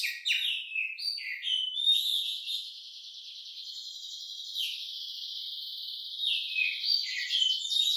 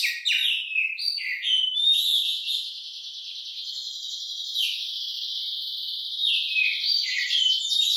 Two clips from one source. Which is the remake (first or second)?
second